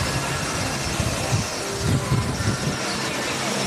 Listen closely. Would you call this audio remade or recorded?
recorded